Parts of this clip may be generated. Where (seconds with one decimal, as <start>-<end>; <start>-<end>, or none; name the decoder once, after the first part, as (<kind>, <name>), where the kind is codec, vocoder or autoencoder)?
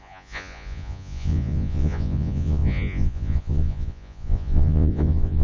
0.0-5.4 (vocoder, Vocos)